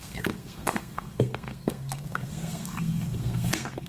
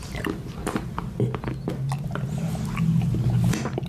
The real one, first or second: second